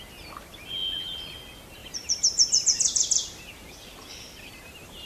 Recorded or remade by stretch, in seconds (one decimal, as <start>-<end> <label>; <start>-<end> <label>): 0.0-1.8 recorded; 1.8-5.1 remade